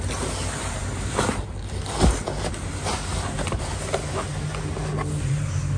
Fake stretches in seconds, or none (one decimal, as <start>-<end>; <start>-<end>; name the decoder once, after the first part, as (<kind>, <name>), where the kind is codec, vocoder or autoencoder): none